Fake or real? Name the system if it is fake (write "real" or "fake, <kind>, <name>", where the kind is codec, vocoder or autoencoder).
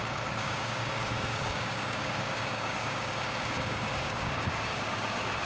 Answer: fake, codec, DAC